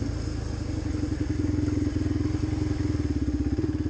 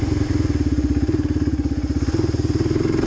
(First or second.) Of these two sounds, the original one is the first